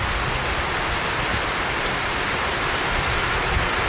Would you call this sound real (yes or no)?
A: yes